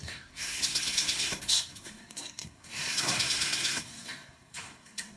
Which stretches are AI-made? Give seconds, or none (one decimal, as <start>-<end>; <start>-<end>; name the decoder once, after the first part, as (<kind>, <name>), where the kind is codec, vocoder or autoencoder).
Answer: 0.0-5.2 (codec, SNAC)